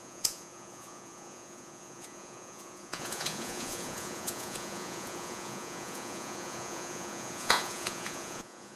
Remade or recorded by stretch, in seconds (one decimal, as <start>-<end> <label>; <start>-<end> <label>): 0.0-8.8 remade